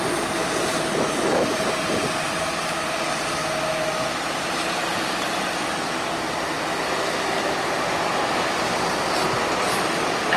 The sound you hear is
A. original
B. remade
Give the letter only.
A